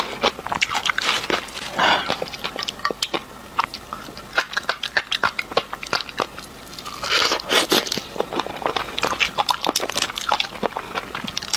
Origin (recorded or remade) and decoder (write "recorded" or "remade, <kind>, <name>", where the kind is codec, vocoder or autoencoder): recorded